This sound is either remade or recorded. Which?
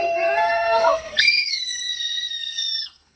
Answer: remade